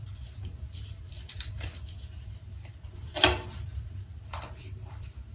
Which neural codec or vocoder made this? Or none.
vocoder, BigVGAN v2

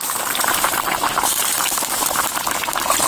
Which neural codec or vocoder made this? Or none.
vocoder, BigVGAN v2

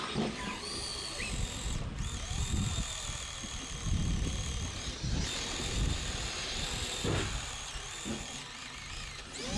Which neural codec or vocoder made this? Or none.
none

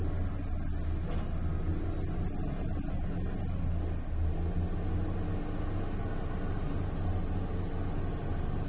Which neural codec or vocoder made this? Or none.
none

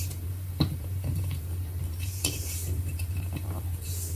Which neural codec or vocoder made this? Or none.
vocoder, BigVGAN v2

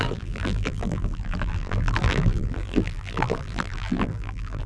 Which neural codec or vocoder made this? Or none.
vocoder, BigVGAN v2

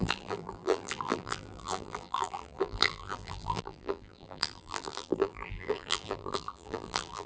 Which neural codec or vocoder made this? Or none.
vocoder, BigVGAN v2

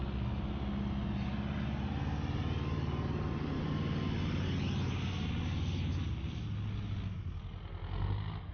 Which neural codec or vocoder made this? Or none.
none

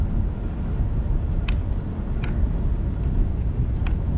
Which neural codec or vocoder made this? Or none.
none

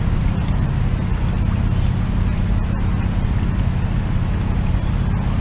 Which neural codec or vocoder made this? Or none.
none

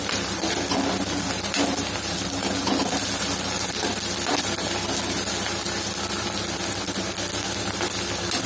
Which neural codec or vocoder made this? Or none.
none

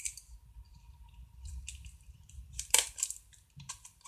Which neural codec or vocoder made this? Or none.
vocoder, BigVGAN v2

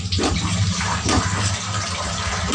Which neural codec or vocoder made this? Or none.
vocoder, BigVGAN v2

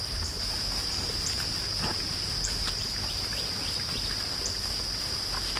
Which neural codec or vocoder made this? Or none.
vocoder, BigVGAN v2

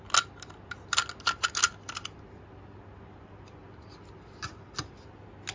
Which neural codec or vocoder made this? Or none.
none